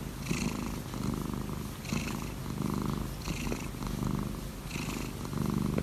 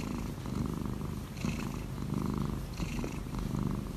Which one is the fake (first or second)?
second